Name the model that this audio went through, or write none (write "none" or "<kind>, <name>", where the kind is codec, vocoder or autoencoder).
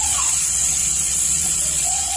vocoder, Vocos